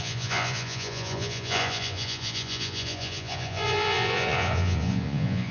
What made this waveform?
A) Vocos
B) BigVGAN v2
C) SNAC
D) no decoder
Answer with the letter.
A